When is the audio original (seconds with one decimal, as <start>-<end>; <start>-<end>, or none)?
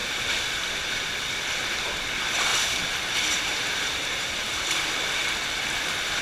0.0-2.5; 4.9-6.2